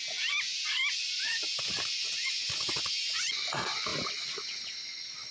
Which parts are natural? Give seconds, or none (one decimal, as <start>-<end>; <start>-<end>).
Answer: 0.0-5.3